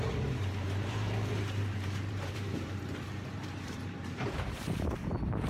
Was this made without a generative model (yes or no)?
no